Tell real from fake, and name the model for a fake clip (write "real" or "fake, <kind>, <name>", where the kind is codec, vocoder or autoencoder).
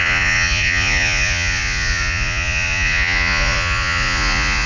fake, vocoder, Vocos